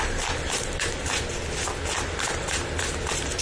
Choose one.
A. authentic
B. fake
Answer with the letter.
A